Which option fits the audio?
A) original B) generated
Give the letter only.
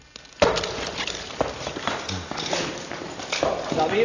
A